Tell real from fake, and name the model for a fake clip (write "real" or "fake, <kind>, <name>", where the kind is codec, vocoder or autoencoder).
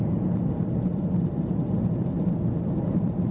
real